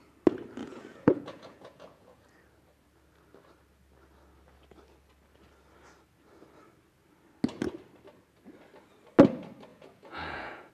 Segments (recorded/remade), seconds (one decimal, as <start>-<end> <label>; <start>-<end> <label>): 0.0-0.6 recorded; 0.6-2.2 remade; 2.2-9.7 recorded; 9.7-10.7 remade